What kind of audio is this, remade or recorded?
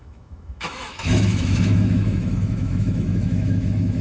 remade